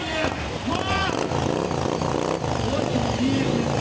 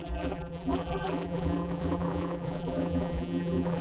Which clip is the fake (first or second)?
second